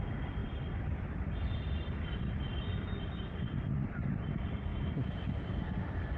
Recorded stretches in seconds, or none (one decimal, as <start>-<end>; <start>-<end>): 0.0-0.4; 4.1-6.2